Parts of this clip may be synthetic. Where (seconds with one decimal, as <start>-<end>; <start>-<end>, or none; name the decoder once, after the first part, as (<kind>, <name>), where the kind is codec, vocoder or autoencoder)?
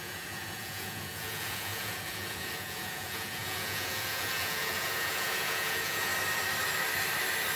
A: 0.0-6.1 (vocoder, Vocos)